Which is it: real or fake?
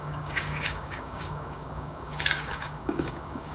fake